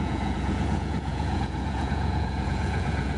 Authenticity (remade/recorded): remade